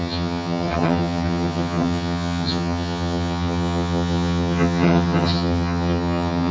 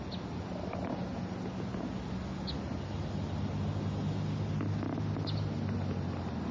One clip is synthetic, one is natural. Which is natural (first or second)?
second